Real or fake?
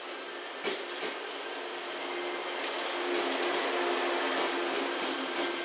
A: real